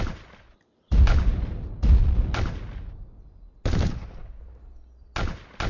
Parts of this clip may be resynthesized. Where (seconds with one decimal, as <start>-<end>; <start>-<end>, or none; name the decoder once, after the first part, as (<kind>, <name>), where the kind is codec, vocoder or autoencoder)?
none